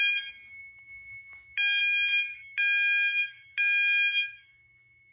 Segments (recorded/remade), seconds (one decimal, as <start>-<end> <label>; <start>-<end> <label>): 0.0-0.6 recorded; 0.6-1.8 remade; 1.8-2.3 recorded; 2.3-5.1 remade